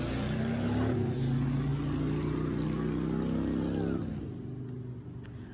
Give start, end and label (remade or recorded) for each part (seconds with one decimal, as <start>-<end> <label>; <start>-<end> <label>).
0.0-5.5 recorded